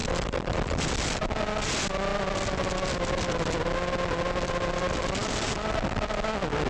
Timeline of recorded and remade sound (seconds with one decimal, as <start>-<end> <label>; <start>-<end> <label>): 0.0-0.9 remade; 0.9-6.7 recorded